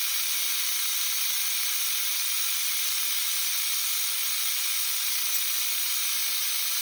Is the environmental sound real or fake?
real